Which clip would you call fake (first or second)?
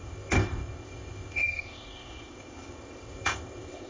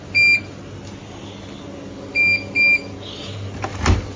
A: first